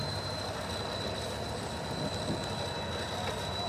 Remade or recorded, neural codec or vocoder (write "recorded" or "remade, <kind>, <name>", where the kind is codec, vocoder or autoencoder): recorded